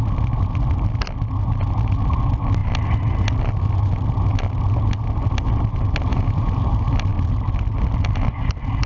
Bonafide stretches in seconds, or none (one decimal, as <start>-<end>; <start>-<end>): 0.0-6.1; 6.6-8.9